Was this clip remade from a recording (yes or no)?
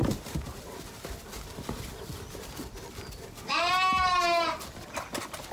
no